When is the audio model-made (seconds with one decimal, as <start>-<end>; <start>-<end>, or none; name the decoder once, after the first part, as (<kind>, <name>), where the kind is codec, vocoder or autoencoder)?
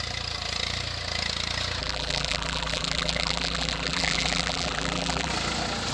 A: 1.8-5.3 (vocoder, BigVGAN v2)